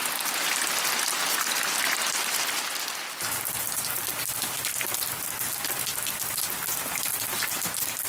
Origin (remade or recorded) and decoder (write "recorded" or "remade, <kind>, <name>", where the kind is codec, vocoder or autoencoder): recorded